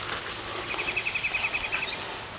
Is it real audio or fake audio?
real